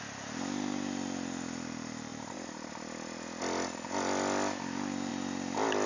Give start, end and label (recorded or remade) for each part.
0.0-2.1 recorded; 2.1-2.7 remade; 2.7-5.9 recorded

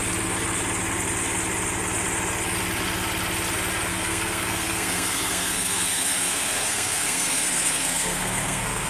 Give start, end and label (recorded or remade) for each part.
0.0-3.9 recorded; 3.9-8.9 remade

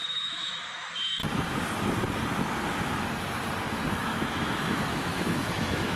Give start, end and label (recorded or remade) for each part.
0.0-1.2 remade; 1.2-4.0 recorded; 4.0-6.0 remade

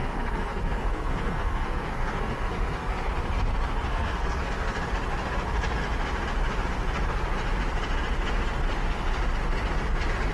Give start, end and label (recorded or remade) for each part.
0.0-3.1 remade; 3.1-3.9 recorded; 3.9-4.8 remade; 4.8-10.3 recorded